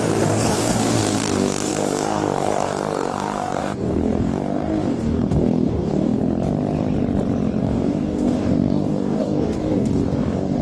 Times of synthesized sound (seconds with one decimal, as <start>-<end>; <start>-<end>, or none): 0.0-6.2; 7.6-10.6